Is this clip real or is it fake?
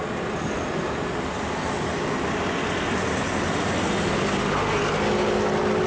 real